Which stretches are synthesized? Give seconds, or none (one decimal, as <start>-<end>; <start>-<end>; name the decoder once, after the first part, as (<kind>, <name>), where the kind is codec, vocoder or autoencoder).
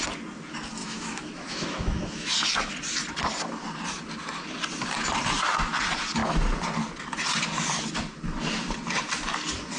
0.8-2.3 (autoencoder, DAC-VAE)